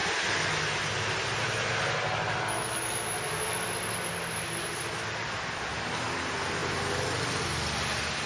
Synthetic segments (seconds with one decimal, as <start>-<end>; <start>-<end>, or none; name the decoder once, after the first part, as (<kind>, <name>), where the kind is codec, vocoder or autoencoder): none